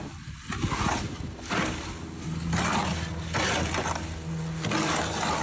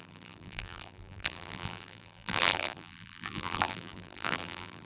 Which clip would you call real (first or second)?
first